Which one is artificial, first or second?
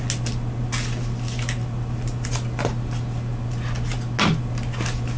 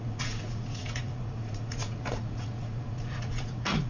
second